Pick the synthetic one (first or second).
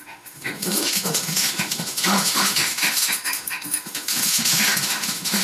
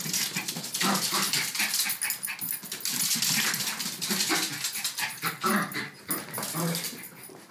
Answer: first